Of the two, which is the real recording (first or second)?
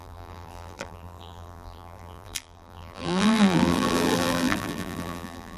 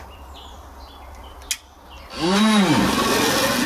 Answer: second